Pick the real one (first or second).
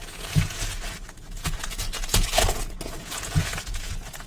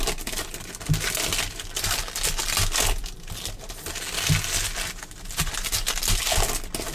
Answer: second